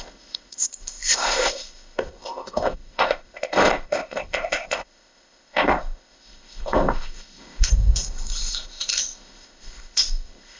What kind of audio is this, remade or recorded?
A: remade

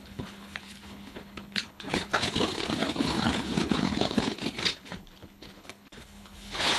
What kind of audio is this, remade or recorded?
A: remade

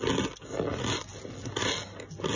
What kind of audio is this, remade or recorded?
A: recorded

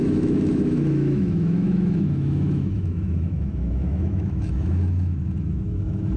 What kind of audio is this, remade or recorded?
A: remade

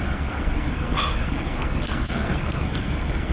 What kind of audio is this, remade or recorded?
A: remade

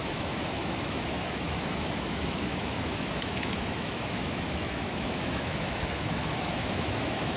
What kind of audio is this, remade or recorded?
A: remade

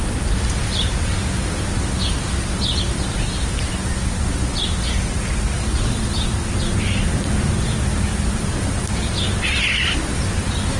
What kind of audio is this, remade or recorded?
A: recorded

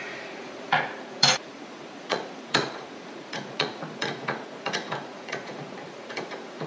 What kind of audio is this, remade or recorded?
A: remade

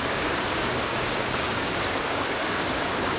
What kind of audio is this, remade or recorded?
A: remade